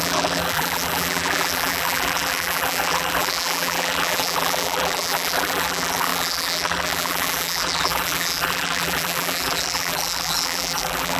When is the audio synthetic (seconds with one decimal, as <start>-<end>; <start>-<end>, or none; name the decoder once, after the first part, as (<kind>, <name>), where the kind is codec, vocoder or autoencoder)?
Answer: 0.0-11.2 (vocoder, BigVGAN v2)